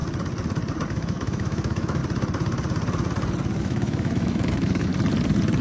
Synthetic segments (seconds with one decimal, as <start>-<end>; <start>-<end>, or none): 0.9-2.0; 3.6-4.9